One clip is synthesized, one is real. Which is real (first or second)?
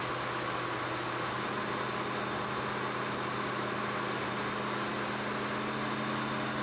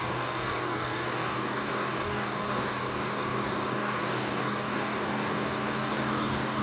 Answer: first